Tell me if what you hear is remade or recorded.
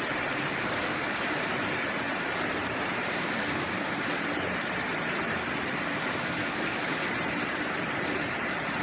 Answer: remade